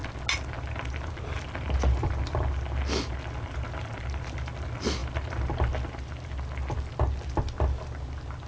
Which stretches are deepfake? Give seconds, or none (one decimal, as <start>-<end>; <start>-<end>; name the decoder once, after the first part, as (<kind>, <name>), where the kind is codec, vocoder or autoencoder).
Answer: none